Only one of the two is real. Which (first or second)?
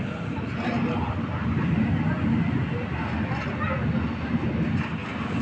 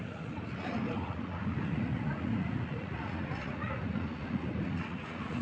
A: first